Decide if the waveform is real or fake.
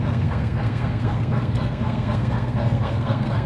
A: fake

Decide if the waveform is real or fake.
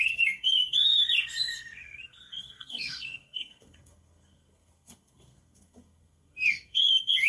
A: fake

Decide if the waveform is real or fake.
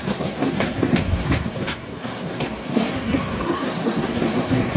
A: fake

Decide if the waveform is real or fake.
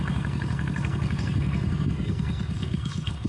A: fake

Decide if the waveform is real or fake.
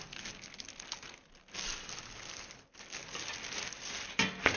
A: real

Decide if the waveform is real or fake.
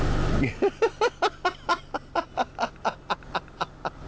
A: real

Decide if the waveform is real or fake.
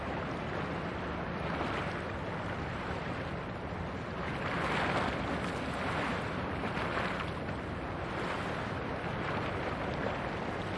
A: real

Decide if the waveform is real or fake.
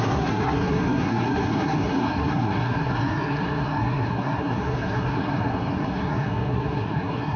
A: fake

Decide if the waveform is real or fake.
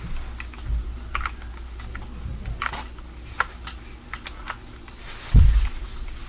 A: real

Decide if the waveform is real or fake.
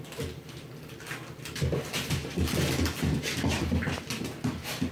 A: real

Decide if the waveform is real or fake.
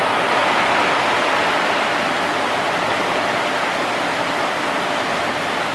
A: real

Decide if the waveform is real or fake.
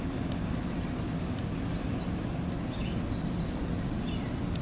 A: real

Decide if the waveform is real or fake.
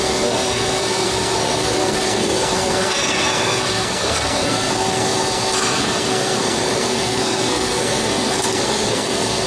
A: fake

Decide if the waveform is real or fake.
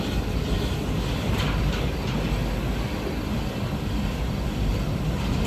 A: real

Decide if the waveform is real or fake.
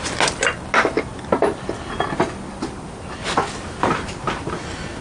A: real